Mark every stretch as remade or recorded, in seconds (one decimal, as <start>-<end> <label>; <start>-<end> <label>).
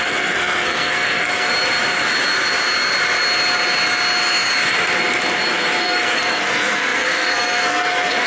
0.0-1.5 remade; 1.5-5.8 recorded; 5.8-8.3 remade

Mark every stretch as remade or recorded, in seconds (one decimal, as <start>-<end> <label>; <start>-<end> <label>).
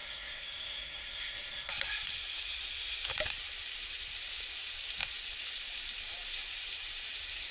0.0-1.7 remade; 1.7-7.5 recorded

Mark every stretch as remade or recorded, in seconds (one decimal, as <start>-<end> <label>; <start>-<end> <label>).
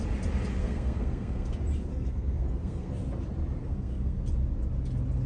0.0-0.6 recorded; 0.6-1.5 remade; 1.5-1.9 recorded; 1.9-2.9 remade; 2.9-3.6 recorded; 3.6-4.2 remade; 4.2-5.3 recorded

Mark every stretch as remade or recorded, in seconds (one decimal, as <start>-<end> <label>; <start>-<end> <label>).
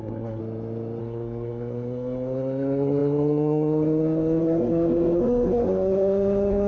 0.0-0.4 remade; 0.4-1.0 recorded; 1.0-6.7 remade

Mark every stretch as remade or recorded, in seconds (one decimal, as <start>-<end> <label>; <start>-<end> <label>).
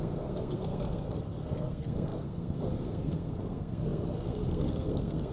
0.0-5.3 remade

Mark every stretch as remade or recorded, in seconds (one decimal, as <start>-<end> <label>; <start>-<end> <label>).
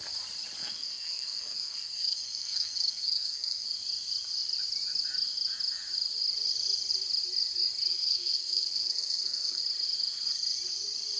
0.0-0.6 recorded; 0.6-3.7 remade; 3.7-7.9 recorded; 7.9-9.6 remade; 9.6-11.2 recorded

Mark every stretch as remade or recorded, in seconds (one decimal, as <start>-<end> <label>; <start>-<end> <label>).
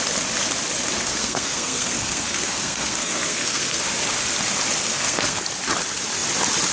0.0-1.1 recorded; 1.1-3.8 remade; 3.8-4.8 recorded; 4.8-5.4 remade; 5.4-6.7 recorded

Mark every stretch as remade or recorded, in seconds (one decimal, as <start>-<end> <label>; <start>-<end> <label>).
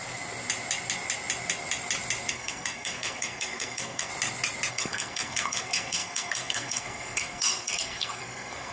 0.0-2.3 recorded; 2.3-4.1 remade; 4.1-4.7 recorded; 4.7-8.7 remade